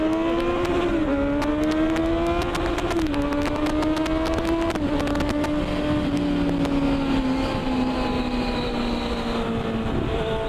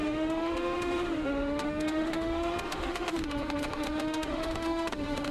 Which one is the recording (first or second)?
first